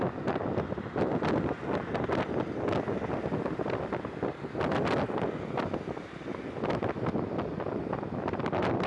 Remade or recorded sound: recorded